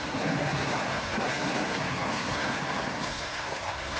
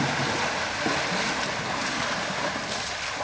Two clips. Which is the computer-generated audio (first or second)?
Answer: first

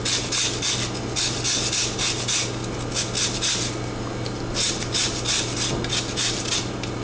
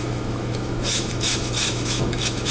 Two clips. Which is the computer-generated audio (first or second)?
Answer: second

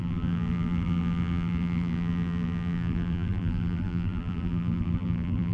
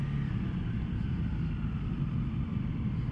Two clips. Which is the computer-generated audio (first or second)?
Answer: first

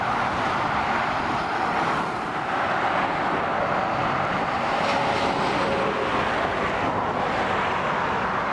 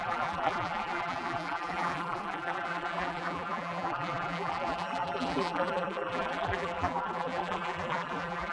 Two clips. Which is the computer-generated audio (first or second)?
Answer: second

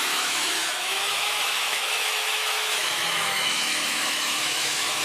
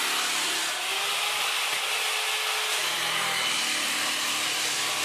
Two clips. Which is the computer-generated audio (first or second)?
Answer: first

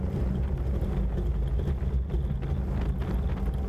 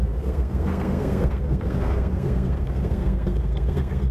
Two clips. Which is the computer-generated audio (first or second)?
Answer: second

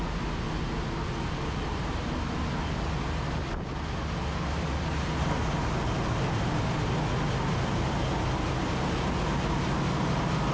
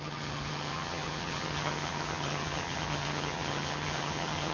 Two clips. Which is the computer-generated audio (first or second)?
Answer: second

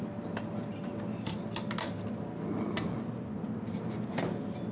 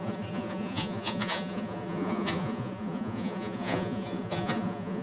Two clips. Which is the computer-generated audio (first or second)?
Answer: second